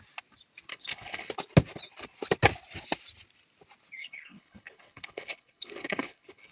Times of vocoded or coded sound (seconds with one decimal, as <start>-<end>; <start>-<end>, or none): 0.7-1.3; 4.0-6.5